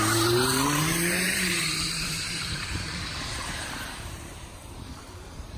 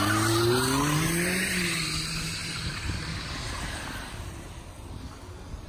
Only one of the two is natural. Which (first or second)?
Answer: second